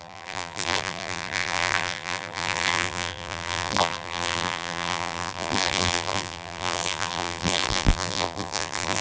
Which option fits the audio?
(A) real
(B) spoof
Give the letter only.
B